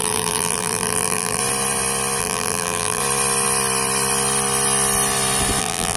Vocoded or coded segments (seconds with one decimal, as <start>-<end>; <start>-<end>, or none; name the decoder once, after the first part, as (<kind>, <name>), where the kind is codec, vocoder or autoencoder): 0.0-1.4 (vocoder, BigVGAN v2); 2.2-3.0; 5.6-6.0